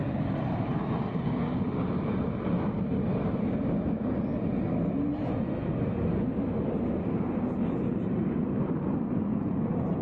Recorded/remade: recorded